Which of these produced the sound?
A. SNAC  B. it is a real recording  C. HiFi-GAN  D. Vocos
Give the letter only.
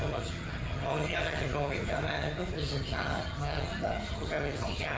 C